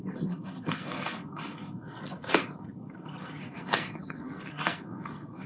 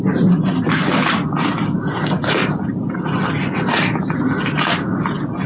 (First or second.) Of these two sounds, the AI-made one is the first